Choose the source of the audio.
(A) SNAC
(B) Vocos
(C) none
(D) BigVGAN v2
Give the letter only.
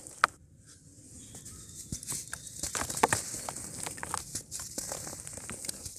C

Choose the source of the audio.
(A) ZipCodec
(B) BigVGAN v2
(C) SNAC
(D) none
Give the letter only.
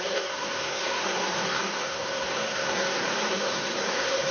C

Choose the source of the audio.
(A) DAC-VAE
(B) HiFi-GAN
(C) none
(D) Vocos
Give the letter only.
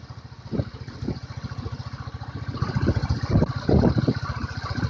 C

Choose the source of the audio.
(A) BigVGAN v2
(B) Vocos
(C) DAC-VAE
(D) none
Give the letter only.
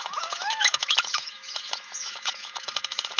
C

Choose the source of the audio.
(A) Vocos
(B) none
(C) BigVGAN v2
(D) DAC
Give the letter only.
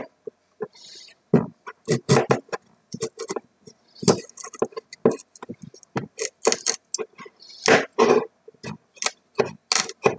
B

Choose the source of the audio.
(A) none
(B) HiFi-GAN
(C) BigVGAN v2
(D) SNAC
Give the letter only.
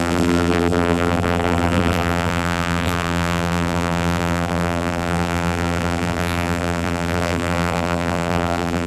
C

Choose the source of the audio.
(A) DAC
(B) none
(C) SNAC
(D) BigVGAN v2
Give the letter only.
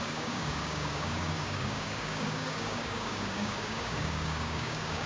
A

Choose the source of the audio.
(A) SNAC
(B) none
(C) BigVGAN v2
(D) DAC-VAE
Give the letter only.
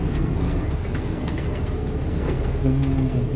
A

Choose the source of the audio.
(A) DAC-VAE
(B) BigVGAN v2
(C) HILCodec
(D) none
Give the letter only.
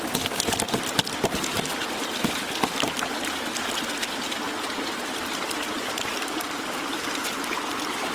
B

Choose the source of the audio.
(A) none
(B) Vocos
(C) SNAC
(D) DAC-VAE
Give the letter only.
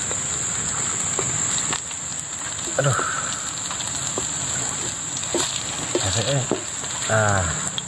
A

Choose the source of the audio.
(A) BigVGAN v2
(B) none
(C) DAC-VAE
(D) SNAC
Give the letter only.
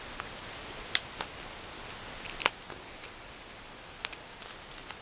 B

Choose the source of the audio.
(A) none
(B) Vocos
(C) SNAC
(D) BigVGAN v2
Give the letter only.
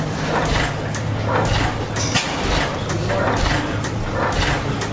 A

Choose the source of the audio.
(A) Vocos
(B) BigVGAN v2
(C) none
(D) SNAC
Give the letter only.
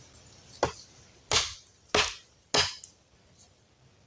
C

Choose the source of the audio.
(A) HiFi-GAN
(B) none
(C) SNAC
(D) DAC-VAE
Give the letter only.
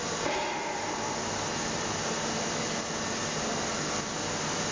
B